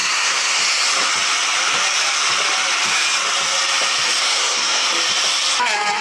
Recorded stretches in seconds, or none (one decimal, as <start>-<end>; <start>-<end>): 0.6-4.2; 4.9-6.0